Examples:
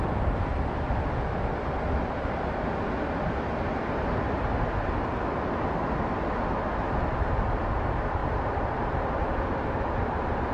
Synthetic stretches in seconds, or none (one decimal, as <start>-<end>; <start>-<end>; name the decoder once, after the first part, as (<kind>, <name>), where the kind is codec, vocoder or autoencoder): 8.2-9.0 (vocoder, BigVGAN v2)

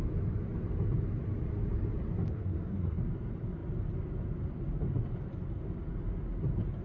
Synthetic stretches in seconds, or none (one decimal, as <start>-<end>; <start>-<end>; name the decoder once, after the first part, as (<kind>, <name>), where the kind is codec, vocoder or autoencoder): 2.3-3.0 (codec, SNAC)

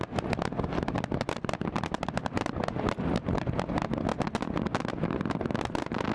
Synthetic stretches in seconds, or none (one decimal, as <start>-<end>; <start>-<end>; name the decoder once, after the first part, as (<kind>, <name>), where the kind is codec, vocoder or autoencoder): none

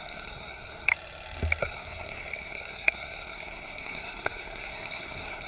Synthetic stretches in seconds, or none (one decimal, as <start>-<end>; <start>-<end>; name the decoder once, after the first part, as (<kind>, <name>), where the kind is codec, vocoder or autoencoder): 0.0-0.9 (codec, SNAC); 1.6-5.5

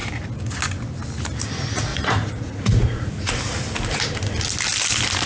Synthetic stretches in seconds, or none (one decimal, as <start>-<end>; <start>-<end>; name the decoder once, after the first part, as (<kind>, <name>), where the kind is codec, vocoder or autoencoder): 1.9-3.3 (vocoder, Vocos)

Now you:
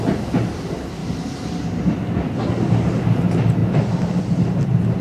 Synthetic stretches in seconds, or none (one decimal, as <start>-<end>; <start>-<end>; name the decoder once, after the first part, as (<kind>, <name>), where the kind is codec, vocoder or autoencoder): none

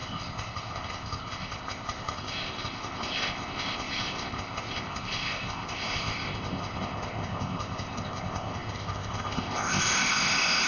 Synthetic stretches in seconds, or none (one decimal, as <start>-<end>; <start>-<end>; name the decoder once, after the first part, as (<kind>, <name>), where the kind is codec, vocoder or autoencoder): 0.0-10.7 (codec, ZipCodec)